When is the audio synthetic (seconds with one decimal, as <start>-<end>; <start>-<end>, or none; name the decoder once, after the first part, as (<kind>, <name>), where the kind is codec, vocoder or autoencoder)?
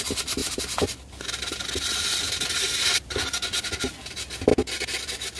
none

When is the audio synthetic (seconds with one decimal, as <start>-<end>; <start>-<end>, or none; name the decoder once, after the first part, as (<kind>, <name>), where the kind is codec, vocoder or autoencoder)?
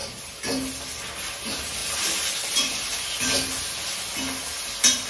none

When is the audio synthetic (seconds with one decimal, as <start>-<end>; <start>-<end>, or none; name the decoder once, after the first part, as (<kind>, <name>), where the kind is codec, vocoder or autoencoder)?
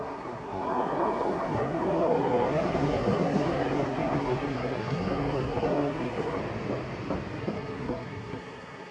0.0-6.4 (codec, SNAC); 7.4-8.9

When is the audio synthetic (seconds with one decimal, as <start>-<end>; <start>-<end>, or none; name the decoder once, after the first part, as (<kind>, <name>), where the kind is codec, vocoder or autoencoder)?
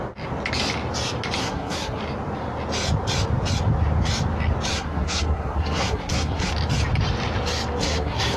1.4-2.0 (codec, SNAC); 4.7-6.5; 7.8-8.4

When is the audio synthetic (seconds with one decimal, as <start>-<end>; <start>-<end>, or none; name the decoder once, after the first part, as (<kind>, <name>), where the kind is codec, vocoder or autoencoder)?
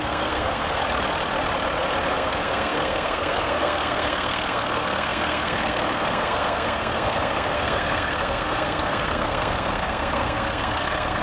0.0-0.8 (codec, SNAC); 2.1-11.2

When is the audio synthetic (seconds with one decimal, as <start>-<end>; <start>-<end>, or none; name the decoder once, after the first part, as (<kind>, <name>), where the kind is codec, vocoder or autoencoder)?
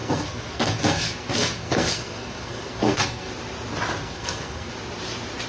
0.0-3.3 (codec, SNAC); 4.0-4.7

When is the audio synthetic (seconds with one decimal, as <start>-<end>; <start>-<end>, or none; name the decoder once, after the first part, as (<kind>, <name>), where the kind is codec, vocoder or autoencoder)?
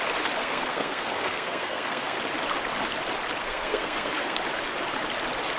0.4-2.2 (codec, SNAC); 3.4-4.4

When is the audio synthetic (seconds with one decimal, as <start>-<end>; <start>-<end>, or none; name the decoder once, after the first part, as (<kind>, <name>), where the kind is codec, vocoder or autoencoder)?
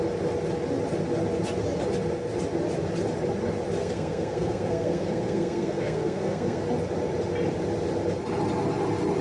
3.8-6.6 (codec, SNAC)